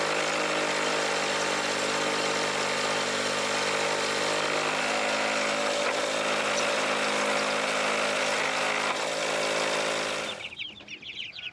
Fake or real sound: real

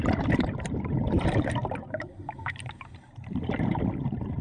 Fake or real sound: fake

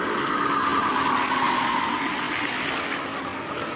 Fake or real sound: real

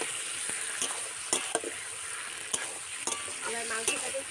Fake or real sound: real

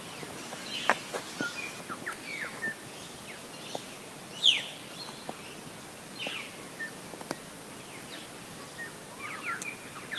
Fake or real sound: real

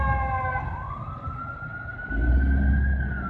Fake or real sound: real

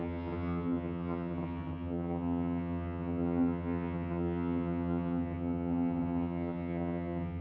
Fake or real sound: fake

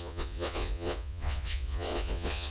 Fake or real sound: fake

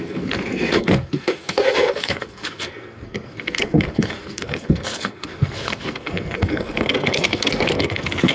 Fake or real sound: fake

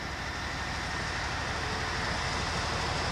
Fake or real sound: real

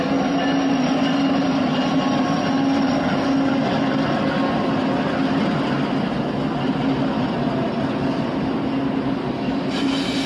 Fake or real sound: real